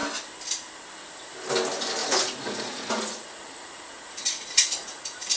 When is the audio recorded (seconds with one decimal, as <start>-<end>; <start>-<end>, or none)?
0.0-2.0